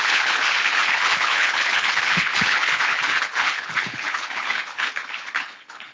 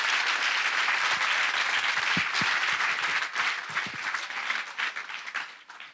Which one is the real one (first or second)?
second